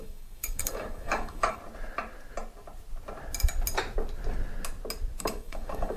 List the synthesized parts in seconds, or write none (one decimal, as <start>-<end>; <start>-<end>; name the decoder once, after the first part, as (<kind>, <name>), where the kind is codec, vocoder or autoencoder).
0.0-1.6 (codec, DAC); 5.2-6.0